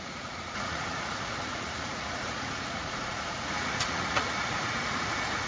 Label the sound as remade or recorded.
remade